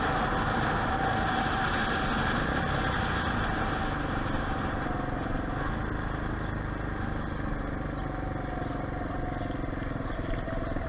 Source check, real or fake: real